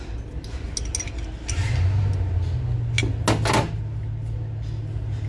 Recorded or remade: recorded